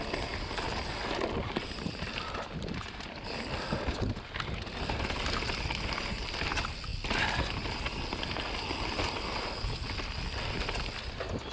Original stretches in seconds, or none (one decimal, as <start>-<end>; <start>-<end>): 0.0-11.5